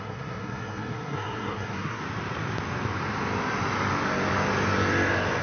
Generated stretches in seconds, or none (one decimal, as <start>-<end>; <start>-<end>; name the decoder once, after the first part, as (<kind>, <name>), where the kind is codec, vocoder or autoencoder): 0.0-2.0 (codec, SNAC)